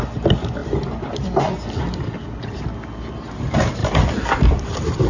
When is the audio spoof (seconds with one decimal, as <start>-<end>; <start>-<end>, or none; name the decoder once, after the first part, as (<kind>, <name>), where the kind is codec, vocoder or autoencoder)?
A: 3.8-5.1 (vocoder, BigVGAN v2)